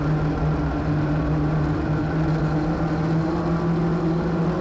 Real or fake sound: real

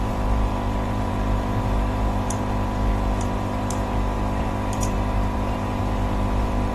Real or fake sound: fake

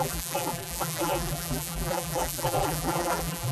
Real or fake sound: fake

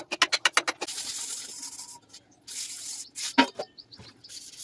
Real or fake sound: real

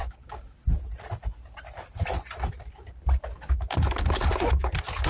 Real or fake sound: real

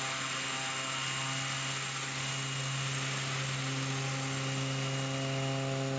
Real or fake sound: real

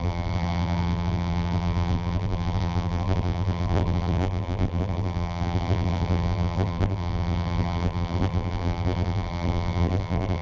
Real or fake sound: fake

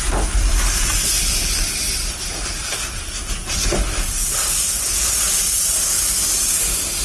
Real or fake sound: real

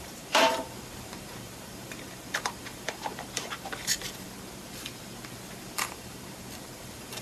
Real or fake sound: fake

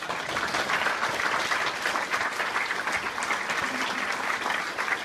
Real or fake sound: real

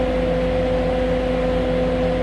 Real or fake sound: real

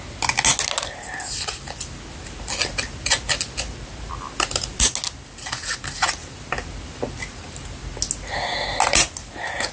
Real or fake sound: real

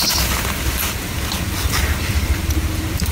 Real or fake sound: fake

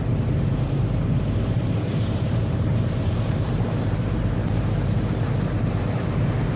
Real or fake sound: fake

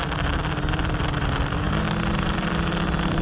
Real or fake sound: fake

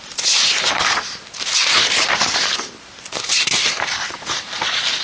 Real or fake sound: fake